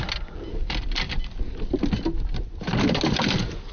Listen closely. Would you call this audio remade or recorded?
recorded